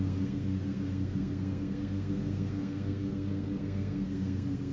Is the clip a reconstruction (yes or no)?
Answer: yes